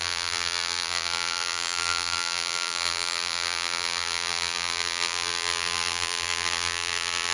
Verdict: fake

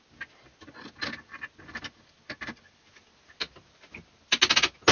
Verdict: real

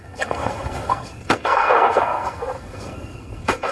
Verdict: fake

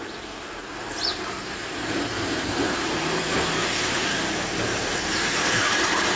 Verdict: fake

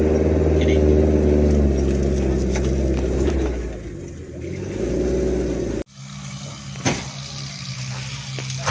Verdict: real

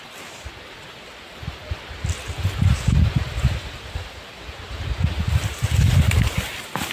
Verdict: real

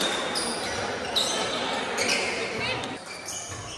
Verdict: real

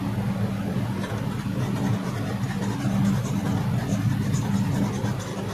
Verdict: real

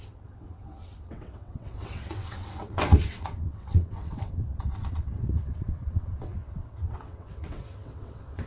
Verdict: fake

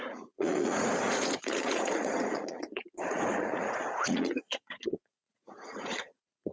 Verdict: fake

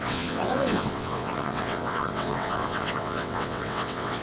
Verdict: fake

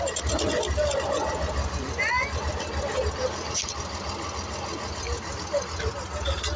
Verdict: real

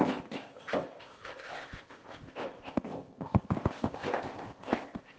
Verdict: fake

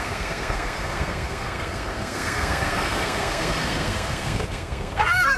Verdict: fake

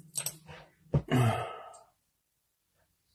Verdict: real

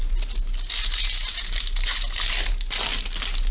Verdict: real